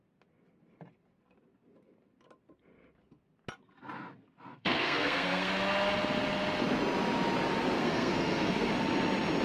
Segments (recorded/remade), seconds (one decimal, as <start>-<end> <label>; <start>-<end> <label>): 0.0-4.5 recorded; 4.5-5.5 remade; 5.5-7.8 recorded; 7.8-8.7 remade; 8.7-9.4 recorded